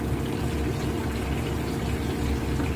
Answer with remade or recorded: recorded